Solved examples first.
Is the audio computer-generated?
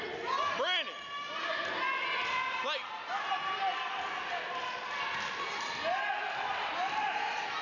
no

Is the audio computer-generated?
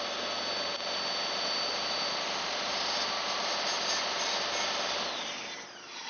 no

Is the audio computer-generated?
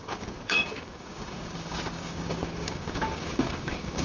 yes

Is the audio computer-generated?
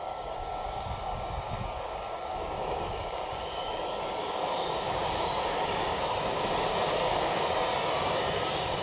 yes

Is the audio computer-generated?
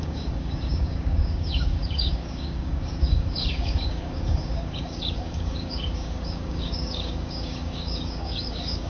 yes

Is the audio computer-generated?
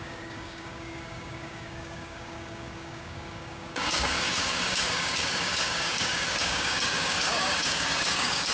yes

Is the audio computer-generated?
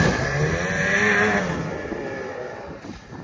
no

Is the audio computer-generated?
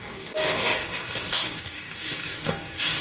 yes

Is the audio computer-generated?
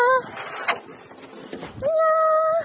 no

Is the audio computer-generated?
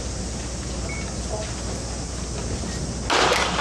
no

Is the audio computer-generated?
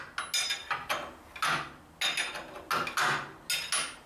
no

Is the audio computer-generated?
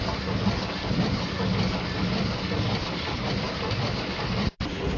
no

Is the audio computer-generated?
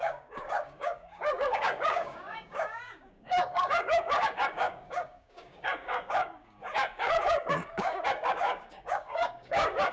yes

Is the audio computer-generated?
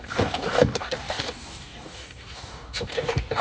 yes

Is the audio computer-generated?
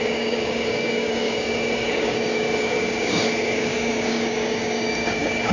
yes